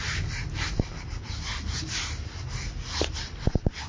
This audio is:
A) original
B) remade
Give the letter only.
A